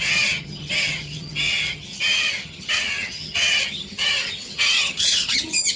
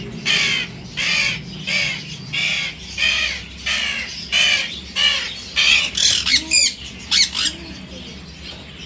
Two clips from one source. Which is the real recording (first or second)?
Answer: second